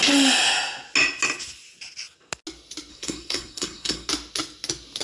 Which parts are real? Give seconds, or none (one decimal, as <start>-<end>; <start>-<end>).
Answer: 0.0-2.9; 4.1-5.0